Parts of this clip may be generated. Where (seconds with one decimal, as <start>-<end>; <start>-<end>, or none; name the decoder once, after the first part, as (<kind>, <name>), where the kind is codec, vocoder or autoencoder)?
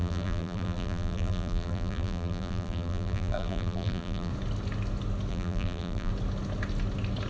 0.0-4.3 (vocoder, BigVGAN v2); 5.3-6.1